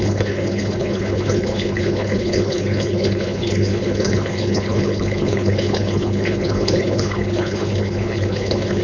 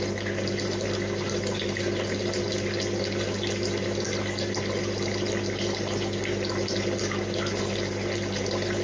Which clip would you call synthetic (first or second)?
first